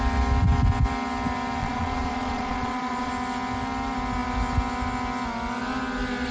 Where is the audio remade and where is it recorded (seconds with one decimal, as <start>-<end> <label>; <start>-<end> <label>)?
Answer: 0.0-1.6 recorded; 1.6-3.1 remade; 3.1-6.3 recorded